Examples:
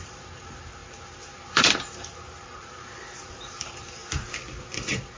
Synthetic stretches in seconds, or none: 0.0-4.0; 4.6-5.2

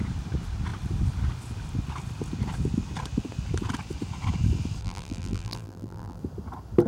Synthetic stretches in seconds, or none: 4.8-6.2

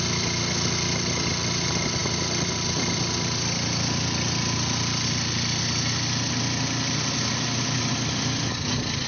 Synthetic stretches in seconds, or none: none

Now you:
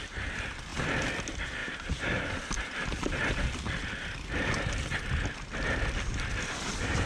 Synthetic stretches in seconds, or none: 1.6-3.2